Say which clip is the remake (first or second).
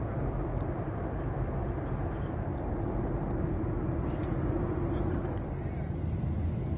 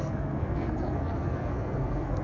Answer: second